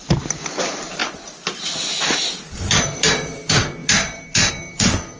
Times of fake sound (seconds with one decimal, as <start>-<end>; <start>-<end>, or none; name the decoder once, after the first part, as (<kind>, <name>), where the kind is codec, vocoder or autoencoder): 0.0-1.0 (vocoder, BigVGAN v2); 2.8-5.2